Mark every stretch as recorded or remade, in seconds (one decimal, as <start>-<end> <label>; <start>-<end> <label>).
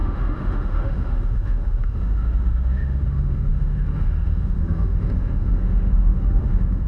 0.0-6.9 remade